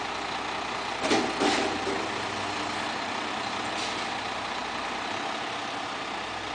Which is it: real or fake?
real